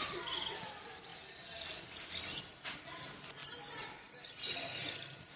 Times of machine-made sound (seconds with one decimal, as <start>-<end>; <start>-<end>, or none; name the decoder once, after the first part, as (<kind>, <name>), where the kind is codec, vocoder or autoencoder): none